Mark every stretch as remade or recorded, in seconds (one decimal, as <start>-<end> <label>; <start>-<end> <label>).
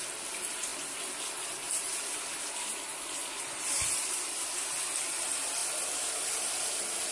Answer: 0.0-7.1 recorded